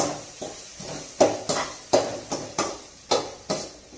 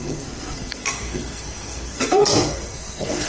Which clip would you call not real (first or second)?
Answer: second